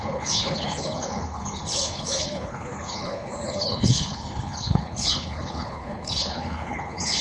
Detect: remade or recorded remade